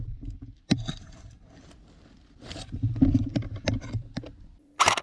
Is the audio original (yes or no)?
no